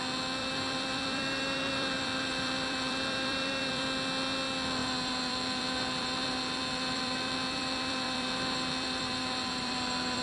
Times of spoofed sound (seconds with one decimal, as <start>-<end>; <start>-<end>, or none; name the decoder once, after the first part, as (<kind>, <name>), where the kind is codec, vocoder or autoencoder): 0.4-3.8 (vocoder, BigVGAN v2); 4.8-10.2